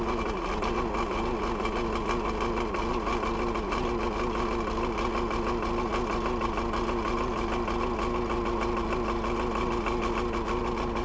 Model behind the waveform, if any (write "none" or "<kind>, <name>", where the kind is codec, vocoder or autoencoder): none